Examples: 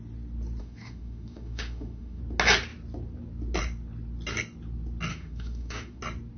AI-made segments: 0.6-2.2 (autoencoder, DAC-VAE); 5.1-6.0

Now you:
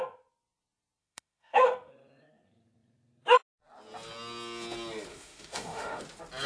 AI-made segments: 1.0-1.9 (autoencoder, DAC-VAE); 5.1-6.0